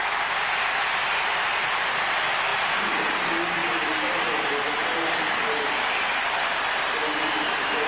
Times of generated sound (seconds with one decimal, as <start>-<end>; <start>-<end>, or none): none